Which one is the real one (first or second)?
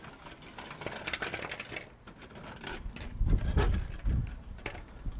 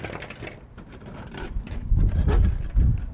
first